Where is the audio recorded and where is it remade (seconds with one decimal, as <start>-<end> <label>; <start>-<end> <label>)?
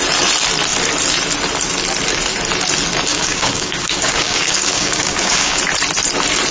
0.0-3.1 recorded; 3.1-5.6 remade; 5.6-6.5 recorded